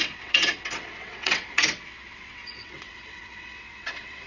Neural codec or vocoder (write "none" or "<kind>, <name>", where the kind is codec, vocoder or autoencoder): vocoder, WaveNeXt